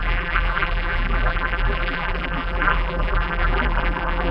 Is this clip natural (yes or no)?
no